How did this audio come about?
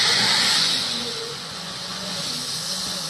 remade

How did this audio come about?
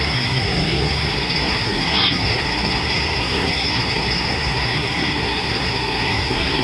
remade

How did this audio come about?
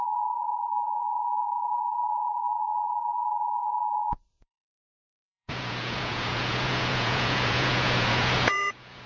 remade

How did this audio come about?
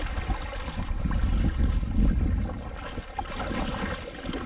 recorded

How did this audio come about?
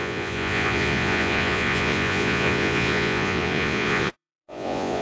remade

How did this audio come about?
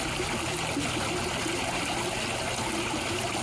recorded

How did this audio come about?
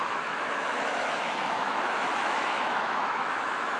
remade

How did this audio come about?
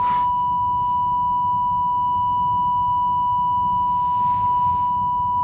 recorded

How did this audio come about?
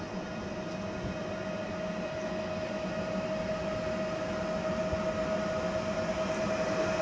recorded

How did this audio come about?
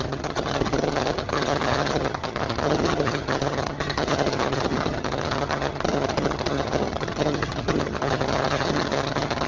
remade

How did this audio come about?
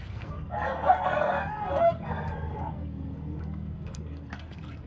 remade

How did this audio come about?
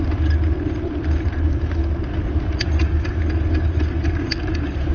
recorded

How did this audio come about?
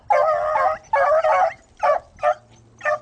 recorded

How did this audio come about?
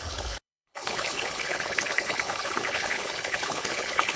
remade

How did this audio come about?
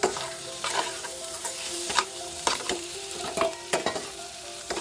remade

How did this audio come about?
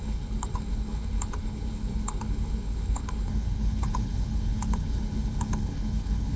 remade